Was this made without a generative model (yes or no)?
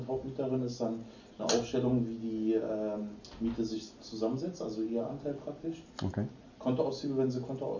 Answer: yes